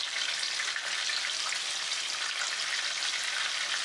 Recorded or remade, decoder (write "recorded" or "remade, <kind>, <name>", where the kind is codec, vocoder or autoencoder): recorded